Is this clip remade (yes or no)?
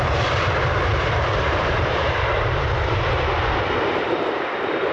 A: yes